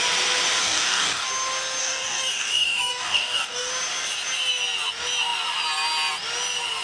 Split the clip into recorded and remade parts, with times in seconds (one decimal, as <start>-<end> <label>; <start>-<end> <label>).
0.0-0.6 recorded; 0.6-1.3 remade; 1.3-1.8 recorded; 1.8-3.7 remade; 3.7-6.8 recorded